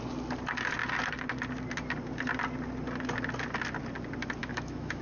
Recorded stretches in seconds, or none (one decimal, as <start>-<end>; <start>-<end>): 0.0-4.4